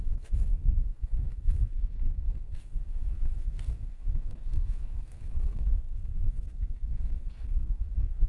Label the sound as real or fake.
fake